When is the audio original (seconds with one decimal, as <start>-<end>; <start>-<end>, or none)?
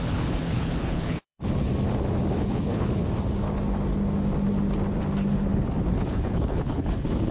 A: 1.7-2.3; 3.0-5.3